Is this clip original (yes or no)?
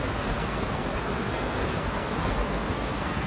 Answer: no